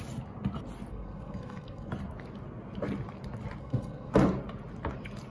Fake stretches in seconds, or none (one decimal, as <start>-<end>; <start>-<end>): 0.9-1.9; 3.6-4.1